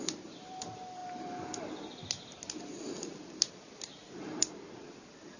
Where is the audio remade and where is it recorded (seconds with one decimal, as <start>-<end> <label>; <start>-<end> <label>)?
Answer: 0.0-5.4 recorded